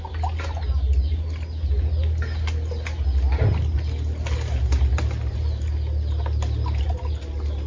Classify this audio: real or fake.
real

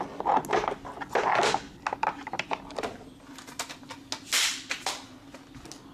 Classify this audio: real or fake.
real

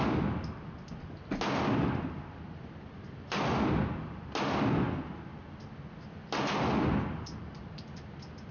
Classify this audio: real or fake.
real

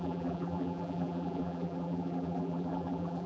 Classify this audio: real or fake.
fake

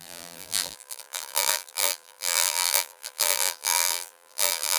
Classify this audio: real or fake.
fake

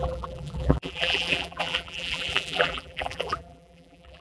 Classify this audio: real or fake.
fake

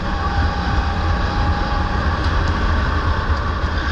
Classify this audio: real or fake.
real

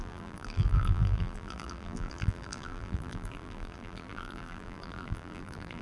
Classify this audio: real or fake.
fake